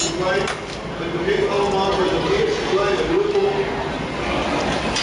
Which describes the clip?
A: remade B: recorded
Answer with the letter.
B